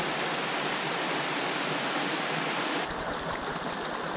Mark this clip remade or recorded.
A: recorded